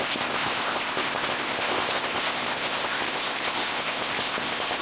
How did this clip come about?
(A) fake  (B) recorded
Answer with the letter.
A